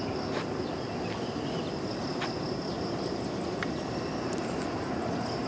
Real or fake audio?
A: real